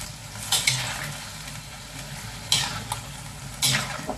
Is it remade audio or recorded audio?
recorded